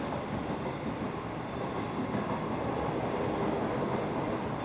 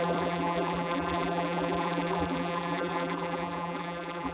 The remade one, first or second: second